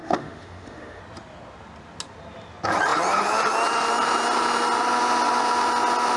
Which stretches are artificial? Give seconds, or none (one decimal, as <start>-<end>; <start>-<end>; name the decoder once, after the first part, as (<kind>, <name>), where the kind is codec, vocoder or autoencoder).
0.0-1.0 (autoencoder, DAC-VAE)